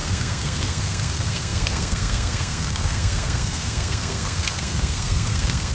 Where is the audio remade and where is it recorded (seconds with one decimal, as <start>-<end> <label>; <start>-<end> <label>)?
0.0-5.7 remade